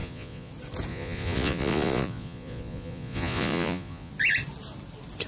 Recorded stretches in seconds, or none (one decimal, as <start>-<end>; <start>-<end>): 0.5-0.9; 4.1-5.3